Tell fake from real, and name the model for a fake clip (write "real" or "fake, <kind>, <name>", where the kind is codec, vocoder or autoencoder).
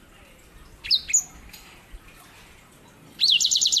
real